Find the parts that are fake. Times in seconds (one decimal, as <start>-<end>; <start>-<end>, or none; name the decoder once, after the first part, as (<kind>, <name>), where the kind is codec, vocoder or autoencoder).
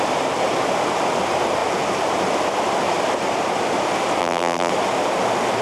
4.2-4.7 (vocoder, BigVGAN v2)